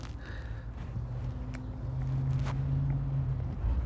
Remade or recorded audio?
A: recorded